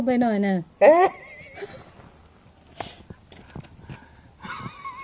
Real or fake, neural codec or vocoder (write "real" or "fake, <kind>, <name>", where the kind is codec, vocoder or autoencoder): real